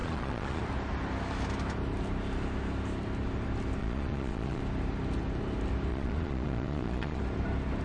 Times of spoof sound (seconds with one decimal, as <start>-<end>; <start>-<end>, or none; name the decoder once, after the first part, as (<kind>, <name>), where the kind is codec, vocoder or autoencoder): 0.0-0.6 (vocoder, Vocos); 3.8-4.6; 5.9-7.2